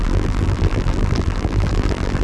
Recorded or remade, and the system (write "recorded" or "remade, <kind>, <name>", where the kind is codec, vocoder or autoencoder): remade, vocoder, BigVGAN v2